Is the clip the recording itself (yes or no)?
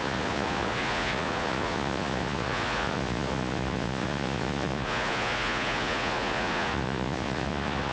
no